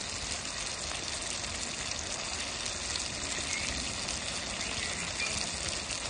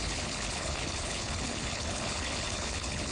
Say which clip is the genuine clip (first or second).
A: first